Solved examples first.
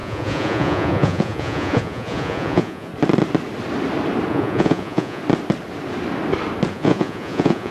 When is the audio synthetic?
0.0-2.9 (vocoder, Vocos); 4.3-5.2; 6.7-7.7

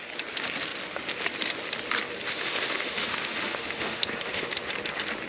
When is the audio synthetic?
2.3-4.6 (autoencoder, DAC-VAE)

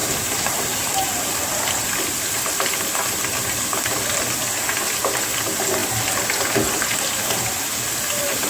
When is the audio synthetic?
0.0-1.6 (vocoder, BigVGAN v2)

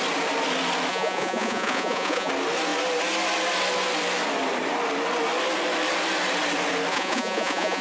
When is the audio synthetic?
0.9-2.3 (vocoder, Vocos); 6.9-7.8

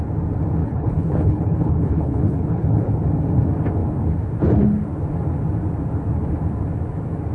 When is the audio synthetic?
0.6-2.9 (codec, HILCodec)

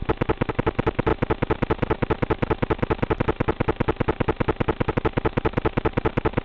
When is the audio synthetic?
none